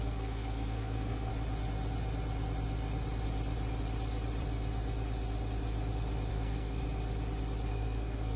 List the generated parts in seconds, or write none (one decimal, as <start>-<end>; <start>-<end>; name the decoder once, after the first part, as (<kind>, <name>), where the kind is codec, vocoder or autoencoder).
0.0-1.3 (codec, SNAC); 6.3-6.8; 7.7-8.4